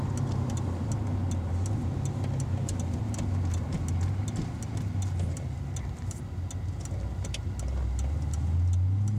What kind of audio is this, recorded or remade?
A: recorded